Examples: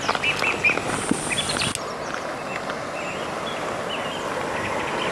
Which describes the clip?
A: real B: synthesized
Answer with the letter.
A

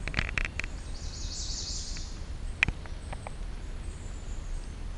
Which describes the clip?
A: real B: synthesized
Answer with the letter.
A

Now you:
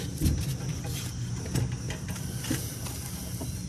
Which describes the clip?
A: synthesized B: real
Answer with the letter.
B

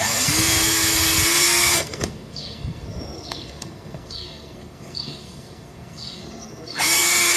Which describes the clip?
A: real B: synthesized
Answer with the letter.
B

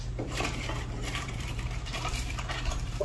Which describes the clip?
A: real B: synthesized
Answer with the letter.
B